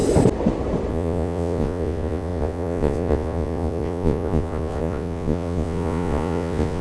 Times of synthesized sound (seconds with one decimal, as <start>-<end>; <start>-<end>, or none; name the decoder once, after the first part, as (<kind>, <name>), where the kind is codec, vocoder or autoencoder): 0.9-6.8 (vocoder, Vocos)